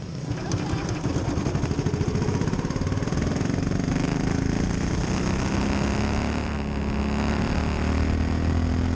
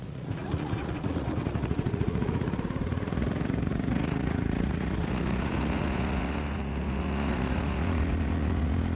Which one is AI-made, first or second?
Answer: second